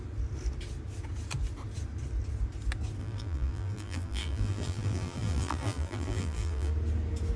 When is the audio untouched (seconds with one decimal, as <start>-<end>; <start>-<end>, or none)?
0.0-3.0; 6.7-7.4